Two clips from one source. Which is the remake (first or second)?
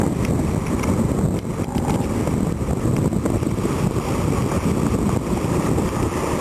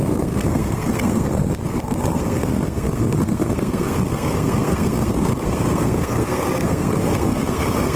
second